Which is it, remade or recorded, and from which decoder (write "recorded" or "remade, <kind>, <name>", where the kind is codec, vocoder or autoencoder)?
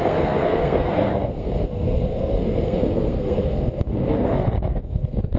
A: remade, codec, SNAC